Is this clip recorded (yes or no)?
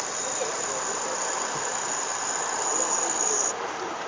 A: yes